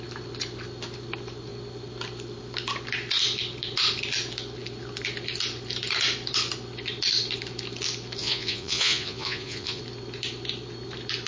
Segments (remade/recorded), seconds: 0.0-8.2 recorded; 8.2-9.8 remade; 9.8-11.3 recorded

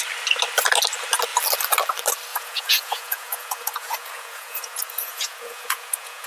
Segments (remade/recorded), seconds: 0.0-2.3 recorded; 2.3-6.3 remade

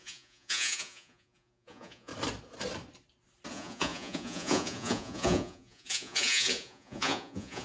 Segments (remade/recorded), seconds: 0.0-2.1 remade; 2.1-3.5 recorded; 3.5-7.6 remade

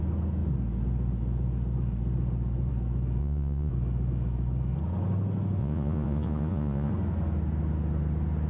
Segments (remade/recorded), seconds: 0.0-3.2 recorded; 3.2-3.7 remade; 3.7-5.6 recorded; 5.6-6.9 remade; 6.9-8.5 recorded

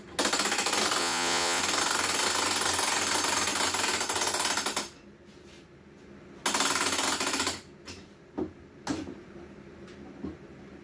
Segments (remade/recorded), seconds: 0.0-1.0 recorded; 1.0-1.6 remade; 1.6-10.8 recorded